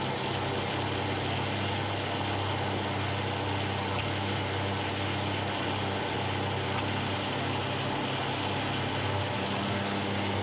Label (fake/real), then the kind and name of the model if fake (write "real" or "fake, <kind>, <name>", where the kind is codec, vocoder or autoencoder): real